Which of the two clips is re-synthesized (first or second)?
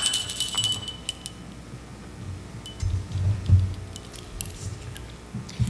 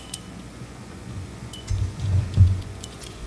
second